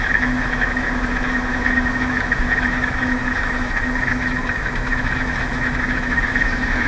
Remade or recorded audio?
remade